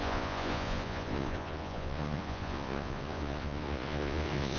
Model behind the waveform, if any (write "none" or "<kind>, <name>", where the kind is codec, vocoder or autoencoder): vocoder, Vocos